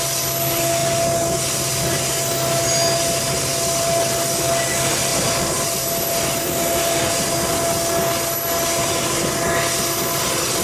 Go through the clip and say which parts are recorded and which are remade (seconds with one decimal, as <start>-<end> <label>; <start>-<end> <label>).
0.0-10.6 recorded